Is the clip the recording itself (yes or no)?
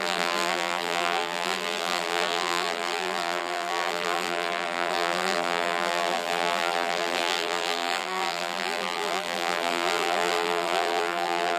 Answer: no